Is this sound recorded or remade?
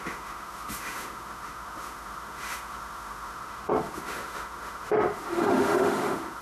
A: remade